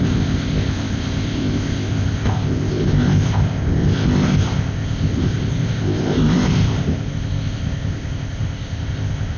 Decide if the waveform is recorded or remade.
remade